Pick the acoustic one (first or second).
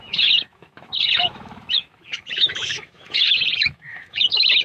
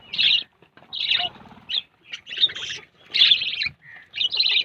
second